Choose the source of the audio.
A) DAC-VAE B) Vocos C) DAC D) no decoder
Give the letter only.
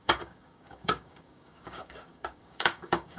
C